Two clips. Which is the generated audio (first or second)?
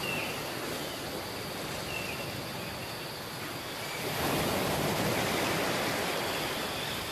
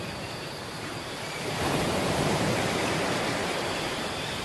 second